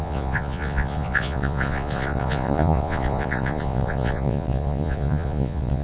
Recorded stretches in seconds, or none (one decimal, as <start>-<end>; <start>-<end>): none